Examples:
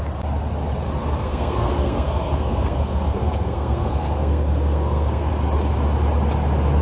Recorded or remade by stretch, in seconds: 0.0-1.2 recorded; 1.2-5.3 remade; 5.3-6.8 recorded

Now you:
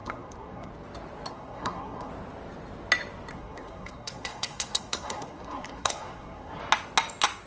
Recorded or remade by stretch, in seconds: 0.0-0.7 remade; 0.7-1.3 recorded; 1.3-2.1 remade; 2.1-3.3 recorded; 3.3-6.6 remade; 6.6-7.5 recorded

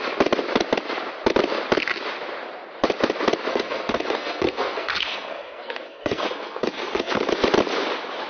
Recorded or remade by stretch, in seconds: 0.0-3.5 recorded; 3.5-7.3 remade; 7.3-8.3 recorded

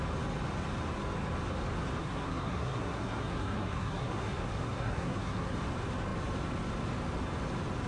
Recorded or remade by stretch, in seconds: 0.0-2.0 recorded; 2.0-5.6 remade; 5.6-7.9 recorded

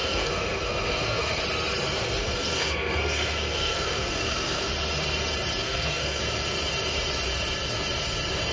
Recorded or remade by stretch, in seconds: 0.0-1.4 remade; 1.4-2.2 recorded; 2.2-4.7 remade; 4.7-5.6 recorded; 5.6-6.2 remade; 6.2-8.5 recorded

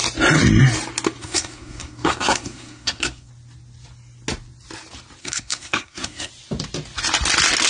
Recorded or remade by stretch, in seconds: 0.0-1.2 recorded; 1.2-3.3 remade; 3.3-5.2 recorded; 5.2-6.3 remade; 6.3-7.7 recorded

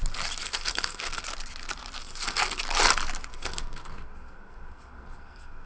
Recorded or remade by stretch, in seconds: 0.0-0.4 recorded; 0.4-1.2 remade; 1.2-2.0 recorded; 2.0-2.6 remade; 2.6-3.3 recorded; 3.3-5.7 remade

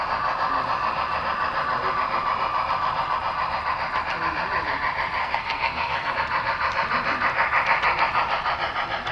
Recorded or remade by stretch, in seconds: 0.0-5.2 recorded; 5.2-6.1 remade; 6.1-9.1 recorded